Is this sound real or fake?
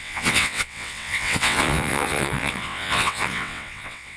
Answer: fake